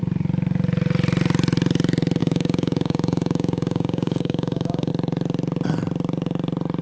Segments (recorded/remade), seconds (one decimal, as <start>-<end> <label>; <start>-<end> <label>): 0.0-2.2 recorded; 2.2-4.9 remade; 4.9-6.8 recorded

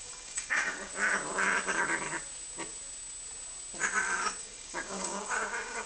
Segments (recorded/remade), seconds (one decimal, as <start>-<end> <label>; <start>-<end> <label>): 0.0-0.9 remade; 0.9-4.4 recorded; 4.4-5.9 remade

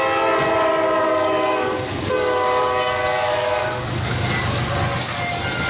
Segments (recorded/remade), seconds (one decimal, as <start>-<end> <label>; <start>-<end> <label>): 0.0-0.7 recorded; 0.7-4.1 remade; 4.1-5.7 recorded